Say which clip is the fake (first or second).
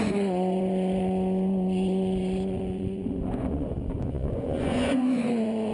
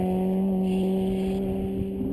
first